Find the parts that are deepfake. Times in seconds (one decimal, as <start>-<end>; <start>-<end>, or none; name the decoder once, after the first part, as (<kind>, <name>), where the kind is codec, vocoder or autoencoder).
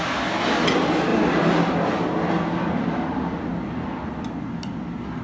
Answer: none